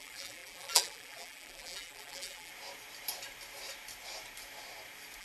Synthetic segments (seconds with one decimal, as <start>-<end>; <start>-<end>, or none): 0.0-2.5